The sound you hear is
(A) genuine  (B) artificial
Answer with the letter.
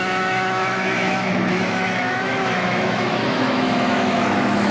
B